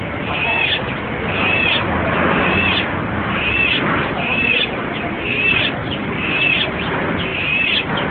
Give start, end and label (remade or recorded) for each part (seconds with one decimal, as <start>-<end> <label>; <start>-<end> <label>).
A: 0.0-5.8 recorded; 5.8-6.3 remade; 6.3-8.1 recorded

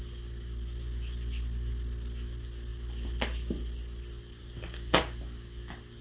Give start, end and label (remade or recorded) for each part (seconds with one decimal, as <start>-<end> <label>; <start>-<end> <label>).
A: 0.0-6.0 recorded